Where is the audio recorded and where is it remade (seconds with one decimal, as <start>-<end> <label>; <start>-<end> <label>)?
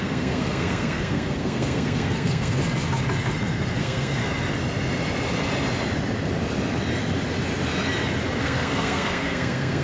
0.0-2.6 remade; 2.6-3.8 recorded; 3.8-4.2 remade; 4.2-8.4 recorded; 8.4-9.8 remade